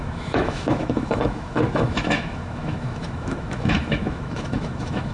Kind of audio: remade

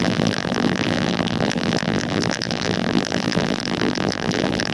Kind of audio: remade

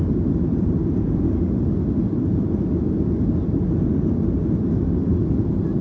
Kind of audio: recorded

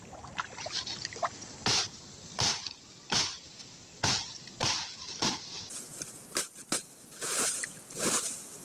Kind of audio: recorded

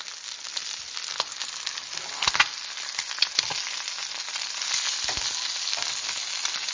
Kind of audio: recorded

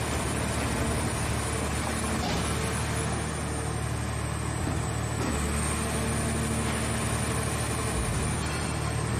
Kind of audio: recorded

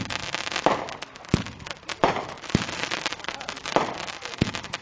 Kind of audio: recorded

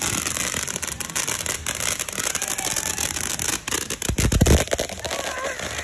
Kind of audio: recorded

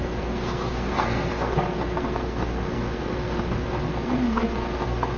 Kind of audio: remade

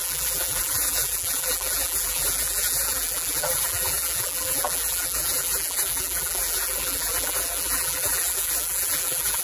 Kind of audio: remade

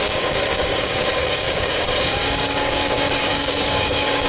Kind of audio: remade